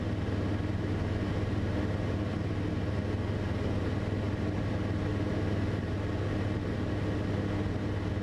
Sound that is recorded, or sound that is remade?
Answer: recorded